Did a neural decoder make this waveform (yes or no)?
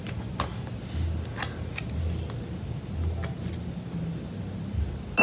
no